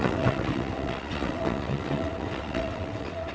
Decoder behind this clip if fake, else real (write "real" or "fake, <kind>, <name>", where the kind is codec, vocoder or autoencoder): fake, vocoder, WaveNeXt